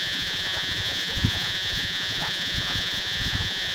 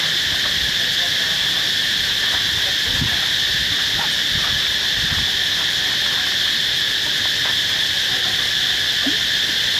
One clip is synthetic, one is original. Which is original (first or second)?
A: second